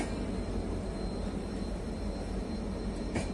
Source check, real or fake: real